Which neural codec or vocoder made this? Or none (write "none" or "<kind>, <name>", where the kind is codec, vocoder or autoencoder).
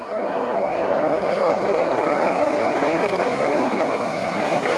codec, SNAC